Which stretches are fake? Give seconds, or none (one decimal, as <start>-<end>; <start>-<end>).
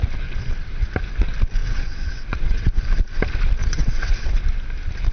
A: 1.6-2.8; 3.6-4.4